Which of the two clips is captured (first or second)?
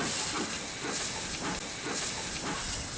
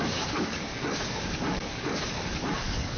first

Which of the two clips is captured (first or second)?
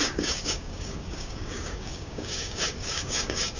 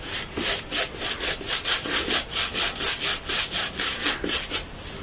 second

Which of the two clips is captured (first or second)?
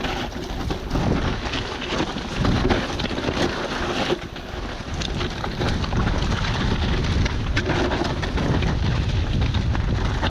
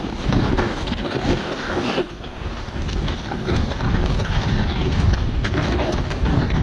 first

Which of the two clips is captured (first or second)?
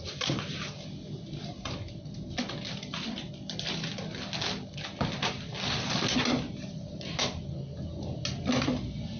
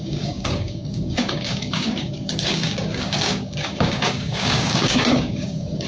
first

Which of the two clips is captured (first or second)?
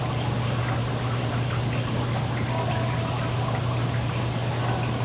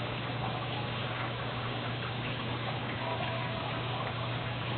first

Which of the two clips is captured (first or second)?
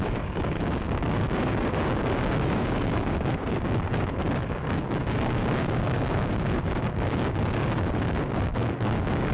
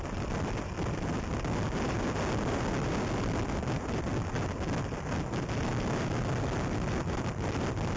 second